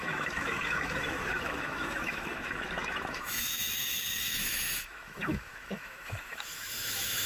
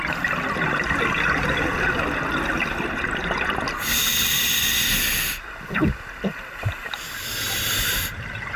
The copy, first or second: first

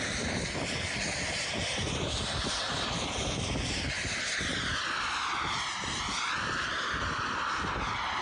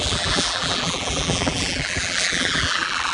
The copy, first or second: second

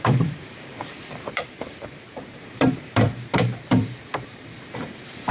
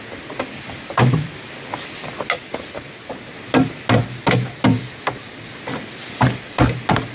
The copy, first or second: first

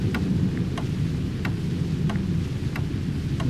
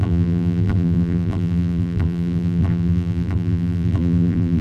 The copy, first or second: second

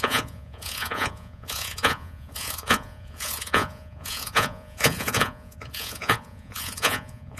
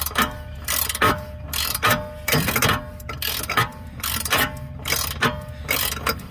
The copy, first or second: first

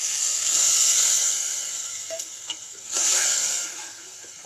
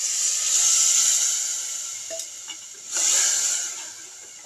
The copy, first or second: first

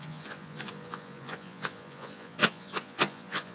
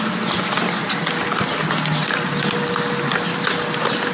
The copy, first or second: first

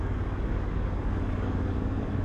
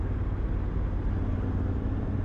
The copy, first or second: first